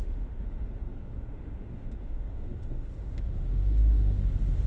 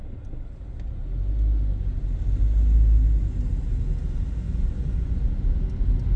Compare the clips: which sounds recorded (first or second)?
second